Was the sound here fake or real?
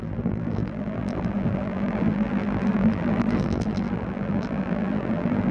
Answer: fake